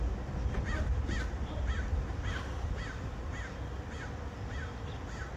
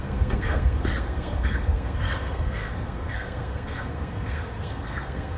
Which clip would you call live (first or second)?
first